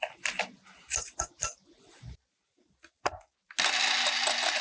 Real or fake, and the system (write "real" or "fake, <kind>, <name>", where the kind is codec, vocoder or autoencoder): real